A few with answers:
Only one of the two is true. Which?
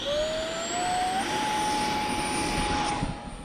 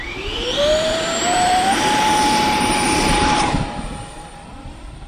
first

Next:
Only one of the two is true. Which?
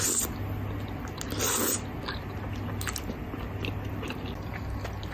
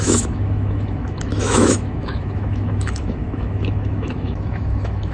first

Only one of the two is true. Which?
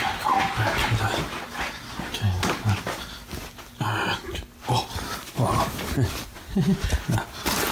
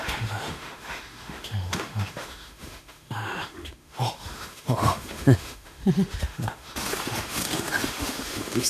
first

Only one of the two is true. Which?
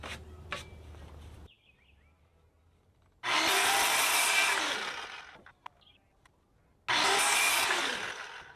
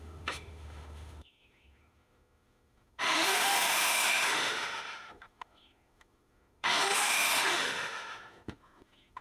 first